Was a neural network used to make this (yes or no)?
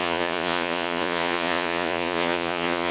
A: yes